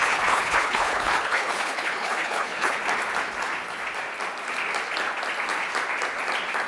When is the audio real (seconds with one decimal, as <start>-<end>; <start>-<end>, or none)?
2.8-6.7